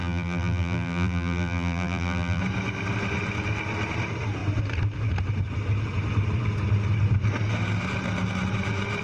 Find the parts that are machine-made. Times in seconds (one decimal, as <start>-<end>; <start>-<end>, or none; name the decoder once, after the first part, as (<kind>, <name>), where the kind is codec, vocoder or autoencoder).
0.0-2.4 (vocoder, BigVGAN v2)